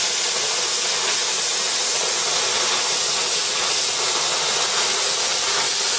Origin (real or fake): real